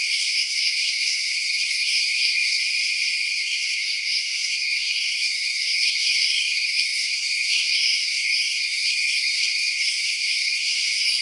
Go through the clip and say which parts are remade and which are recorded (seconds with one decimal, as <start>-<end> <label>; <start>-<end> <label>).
0.0-2.6 remade; 2.6-3.3 recorded; 3.3-11.2 remade